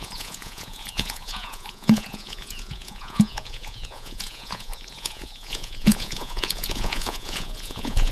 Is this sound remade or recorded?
remade